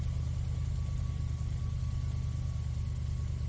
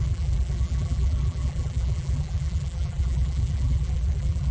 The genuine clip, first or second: first